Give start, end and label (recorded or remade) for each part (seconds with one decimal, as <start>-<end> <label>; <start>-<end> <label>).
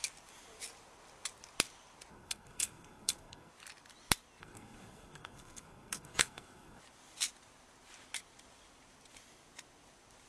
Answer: 0.0-2.1 recorded; 2.1-3.5 remade; 3.5-4.4 recorded; 4.4-6.8 remade; 6.8-10.3 recorded